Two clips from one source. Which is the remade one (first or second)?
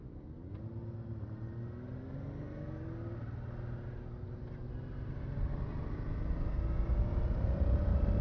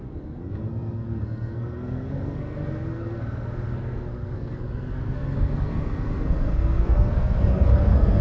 second